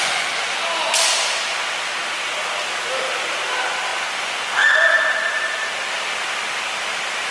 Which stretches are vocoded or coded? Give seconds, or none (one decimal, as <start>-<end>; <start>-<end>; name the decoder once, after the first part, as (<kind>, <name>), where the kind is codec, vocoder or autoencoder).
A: 0.0-0.6 (vocoder, Vocos); 3.9-4.5